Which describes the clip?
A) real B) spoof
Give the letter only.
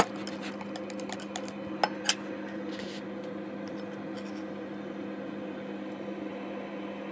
A